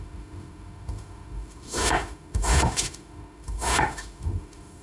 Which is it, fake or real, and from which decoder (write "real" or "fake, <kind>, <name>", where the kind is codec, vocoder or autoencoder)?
fake, autoencoder, DAC-VAE